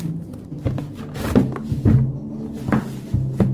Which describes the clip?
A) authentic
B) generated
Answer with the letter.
A